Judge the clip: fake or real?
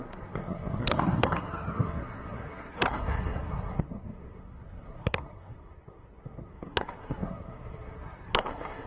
fake